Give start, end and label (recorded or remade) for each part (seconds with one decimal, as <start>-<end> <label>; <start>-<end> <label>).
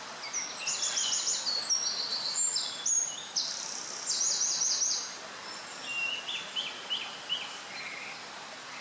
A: 0.0-8.8 recorded